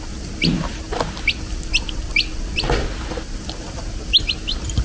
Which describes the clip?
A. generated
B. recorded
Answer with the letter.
B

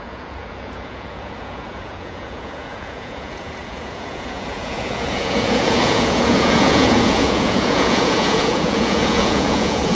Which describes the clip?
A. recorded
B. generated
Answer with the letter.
B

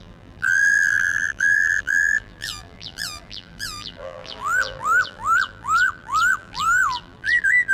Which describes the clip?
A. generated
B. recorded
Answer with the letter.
A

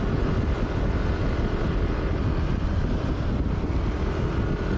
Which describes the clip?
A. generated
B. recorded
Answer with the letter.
B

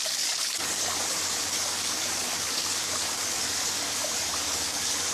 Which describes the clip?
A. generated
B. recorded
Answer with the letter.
A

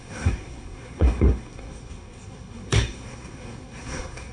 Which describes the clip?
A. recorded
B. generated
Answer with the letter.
B